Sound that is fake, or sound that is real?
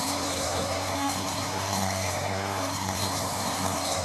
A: fake